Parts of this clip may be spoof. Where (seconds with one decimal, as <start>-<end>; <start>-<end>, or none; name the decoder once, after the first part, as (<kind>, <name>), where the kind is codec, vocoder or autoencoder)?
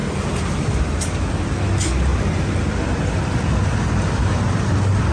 none